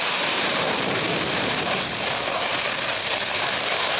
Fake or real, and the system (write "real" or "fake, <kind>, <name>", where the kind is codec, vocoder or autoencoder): fake, vocoder, BigVGAN v2